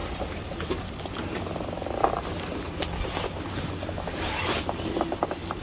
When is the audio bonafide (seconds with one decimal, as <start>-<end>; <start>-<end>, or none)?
0.0-5.6